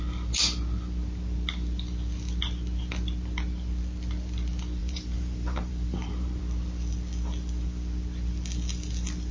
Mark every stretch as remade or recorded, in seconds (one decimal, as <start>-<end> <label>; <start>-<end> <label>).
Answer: 0.0-4.8 recorded; 4.8-6.4 remade; 6.4-9.3 recorded